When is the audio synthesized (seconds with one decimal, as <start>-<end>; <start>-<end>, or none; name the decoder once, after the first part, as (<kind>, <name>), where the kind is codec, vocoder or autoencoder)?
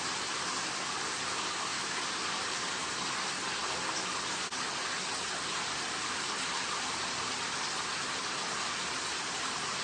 1.7-2.7 (vocoder, BigVGAN v2)